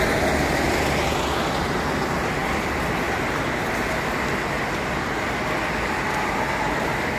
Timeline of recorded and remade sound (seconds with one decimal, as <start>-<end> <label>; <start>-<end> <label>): 0.0-7.2 recorded